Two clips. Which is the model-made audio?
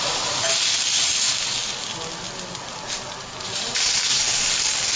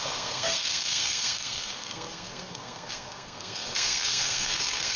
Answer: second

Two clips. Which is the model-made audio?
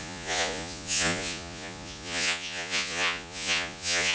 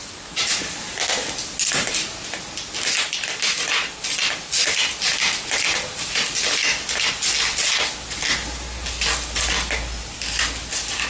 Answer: first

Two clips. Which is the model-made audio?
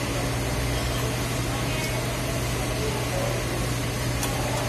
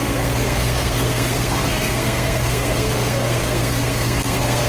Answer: second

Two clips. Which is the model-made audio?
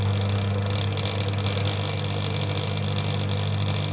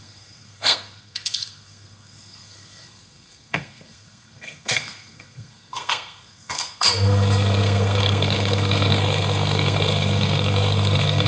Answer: second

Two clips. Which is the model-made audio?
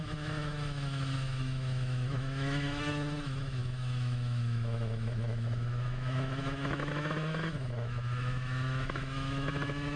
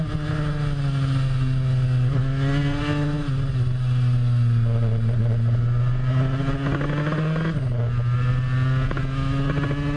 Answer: first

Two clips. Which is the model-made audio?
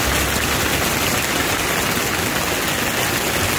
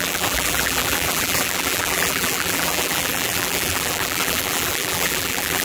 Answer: second